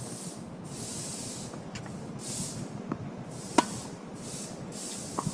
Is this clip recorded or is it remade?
recorded